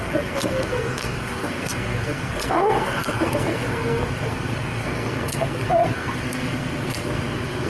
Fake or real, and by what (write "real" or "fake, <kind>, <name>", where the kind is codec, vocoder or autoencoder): fake, codec, SNAC